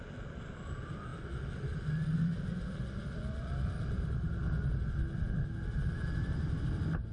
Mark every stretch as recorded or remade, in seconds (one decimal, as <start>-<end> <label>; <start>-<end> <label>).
0.0-7.1 recorded